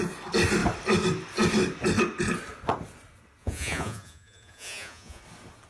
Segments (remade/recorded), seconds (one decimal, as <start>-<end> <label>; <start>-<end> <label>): 0.0-3.4 recorded; 3.4-5.2 remade; 5.2-5.7 recorded